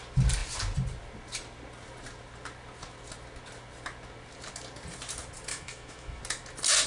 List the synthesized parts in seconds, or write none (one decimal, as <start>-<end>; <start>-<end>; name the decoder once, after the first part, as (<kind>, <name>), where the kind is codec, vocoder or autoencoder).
5.5-6.2 (autoencoder, DAC-VAE)